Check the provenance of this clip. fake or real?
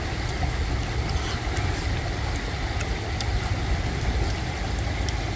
real